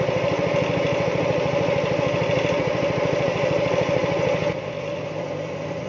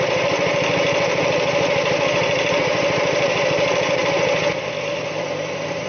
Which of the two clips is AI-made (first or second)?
second